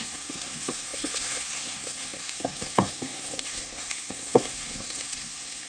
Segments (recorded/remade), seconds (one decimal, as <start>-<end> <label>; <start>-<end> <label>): 0.0-5.7 remade